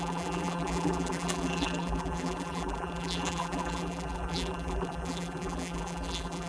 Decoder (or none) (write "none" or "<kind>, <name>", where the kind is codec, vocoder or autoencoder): vocoder, BigVGAN v2